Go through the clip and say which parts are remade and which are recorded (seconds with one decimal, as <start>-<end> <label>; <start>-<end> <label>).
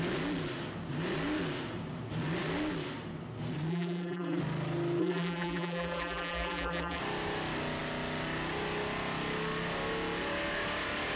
0.0-3.7 recorded; 3.7-4.4 remade; 4.4-5.0 recorded; 5.0-7.0 remade; 7.0-11.2 recorded